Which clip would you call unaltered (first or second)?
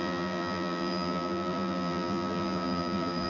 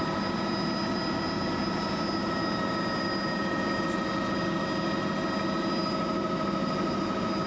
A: second